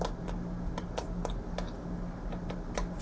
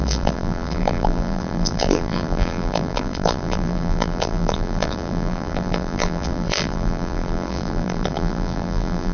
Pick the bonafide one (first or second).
first